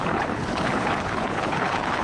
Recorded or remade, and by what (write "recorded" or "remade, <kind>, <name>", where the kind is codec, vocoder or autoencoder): remade, codec, HILCodec